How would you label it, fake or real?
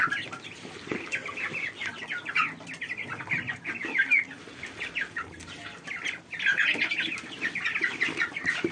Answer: real